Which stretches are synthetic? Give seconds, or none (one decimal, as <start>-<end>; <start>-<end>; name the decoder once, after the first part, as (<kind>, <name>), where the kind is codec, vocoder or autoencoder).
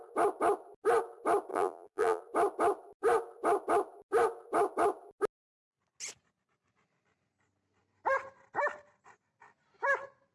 1.5-2.2 (vocoder, BigVGAN v2)